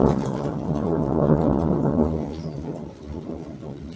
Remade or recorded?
remade